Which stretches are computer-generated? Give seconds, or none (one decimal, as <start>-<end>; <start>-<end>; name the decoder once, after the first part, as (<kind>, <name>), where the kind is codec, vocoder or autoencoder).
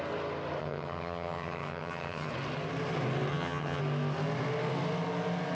0.6-2.3 (vocoder, HiFi-GAN); 3.3-3.8